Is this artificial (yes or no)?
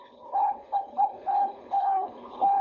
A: yes